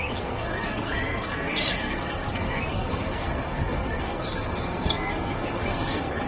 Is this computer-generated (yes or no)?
yes